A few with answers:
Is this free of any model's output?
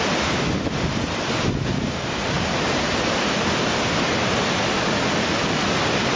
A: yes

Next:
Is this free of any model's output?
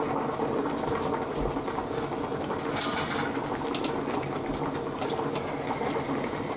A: yes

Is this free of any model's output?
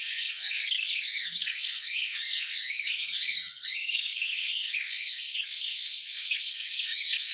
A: no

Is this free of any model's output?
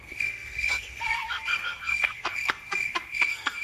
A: no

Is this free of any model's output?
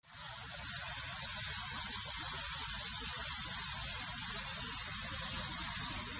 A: yes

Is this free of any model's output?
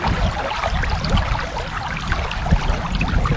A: yes